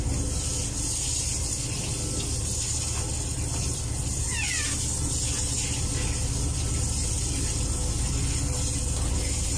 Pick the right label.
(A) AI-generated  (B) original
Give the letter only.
B